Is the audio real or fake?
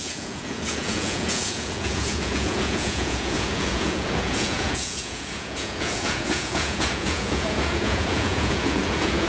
fake